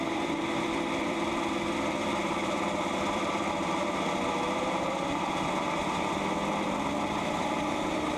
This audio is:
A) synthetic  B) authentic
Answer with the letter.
A